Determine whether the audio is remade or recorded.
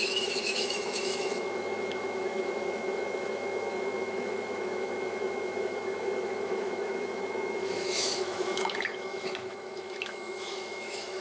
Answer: remade